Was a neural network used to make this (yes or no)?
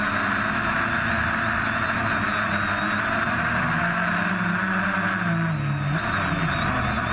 no